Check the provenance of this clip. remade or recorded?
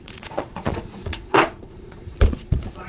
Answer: remade